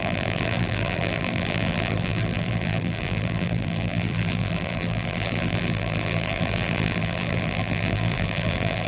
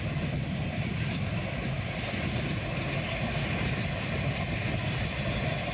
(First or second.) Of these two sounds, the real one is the second